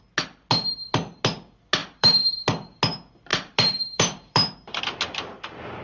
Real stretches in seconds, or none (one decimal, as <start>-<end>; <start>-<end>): 0.0-1.8; 2.4-3.3; 4.8-5.8